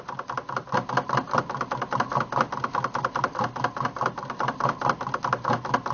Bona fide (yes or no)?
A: yes